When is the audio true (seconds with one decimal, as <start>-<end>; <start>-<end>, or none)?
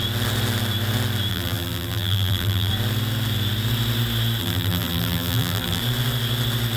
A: 0.0-1.3; 2.7-4.4; 5.8-6.8